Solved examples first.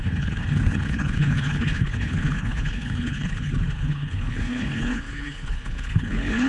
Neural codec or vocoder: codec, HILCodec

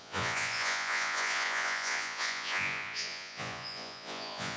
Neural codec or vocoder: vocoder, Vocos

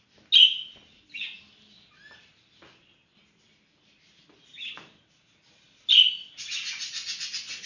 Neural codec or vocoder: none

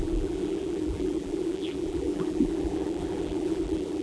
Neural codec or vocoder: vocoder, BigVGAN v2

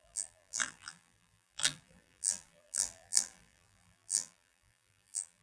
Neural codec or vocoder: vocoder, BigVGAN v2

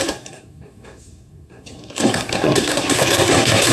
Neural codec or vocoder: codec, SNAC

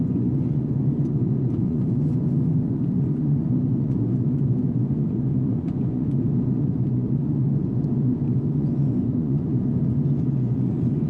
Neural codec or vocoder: vocoder, Vocos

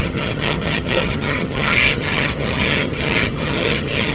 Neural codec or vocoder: vocoder, HiFi-GAN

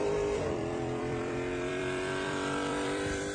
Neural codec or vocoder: vocoder, BigVGAN v2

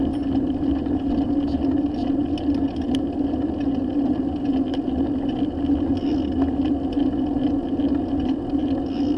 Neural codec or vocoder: none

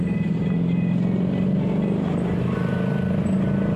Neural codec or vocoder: none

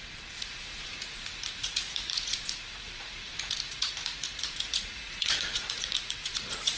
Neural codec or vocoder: vocoder, Vocos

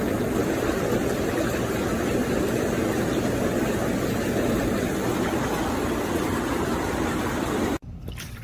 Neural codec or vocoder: none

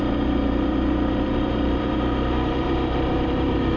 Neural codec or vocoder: vocoder, BigVGAN v2